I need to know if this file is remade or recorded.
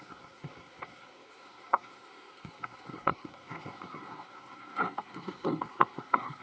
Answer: remade